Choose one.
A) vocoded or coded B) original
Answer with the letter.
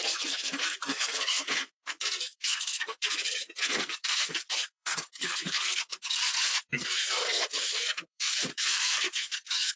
A